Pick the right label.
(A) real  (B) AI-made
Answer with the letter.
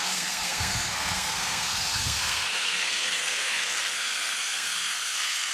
B